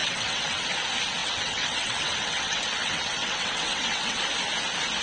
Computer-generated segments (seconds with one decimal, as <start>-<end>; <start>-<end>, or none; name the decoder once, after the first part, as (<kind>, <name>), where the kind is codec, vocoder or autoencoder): 0.0-0.6 (vocoder, WaveNeXt); 1.2-4.2